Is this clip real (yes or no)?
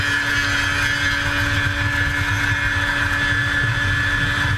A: yes